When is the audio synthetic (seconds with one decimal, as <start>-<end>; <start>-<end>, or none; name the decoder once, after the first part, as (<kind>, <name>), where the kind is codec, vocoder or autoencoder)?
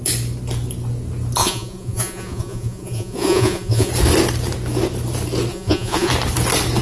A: 1.4-3.9 (vocoder, Vocos); 5.5-6.1